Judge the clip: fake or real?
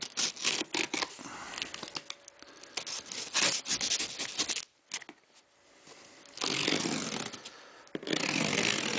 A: real